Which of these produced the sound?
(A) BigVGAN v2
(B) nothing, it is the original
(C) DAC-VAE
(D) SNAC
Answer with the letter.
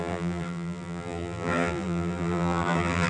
A